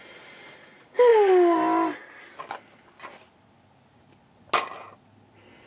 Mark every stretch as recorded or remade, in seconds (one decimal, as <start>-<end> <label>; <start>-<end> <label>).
0.0-5.7 recorded